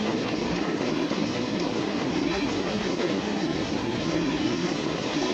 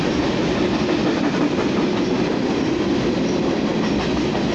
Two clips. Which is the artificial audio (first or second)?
first